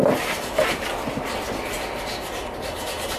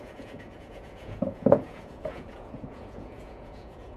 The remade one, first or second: second